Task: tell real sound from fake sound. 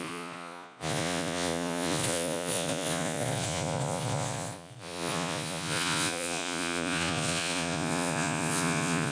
fake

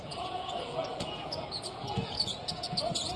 fake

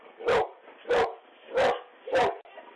real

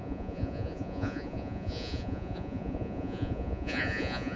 fake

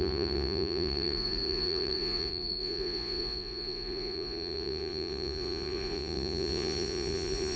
fake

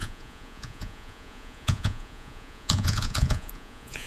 fake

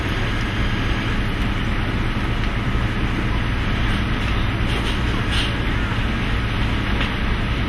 real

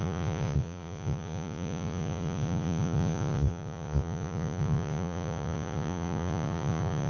fake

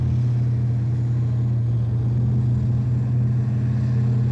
real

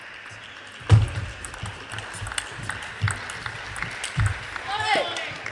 real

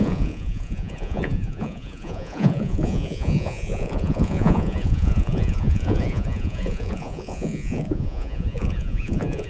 fake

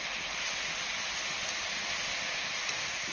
real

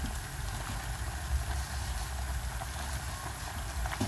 real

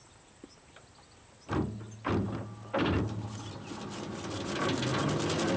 real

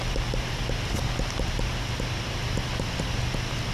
real